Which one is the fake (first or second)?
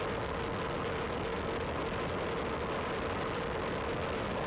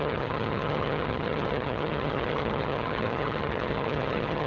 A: second